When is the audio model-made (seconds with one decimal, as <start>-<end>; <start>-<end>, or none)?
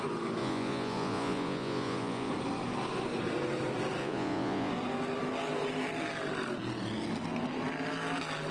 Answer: 0.4-2.3; 4.0-4.7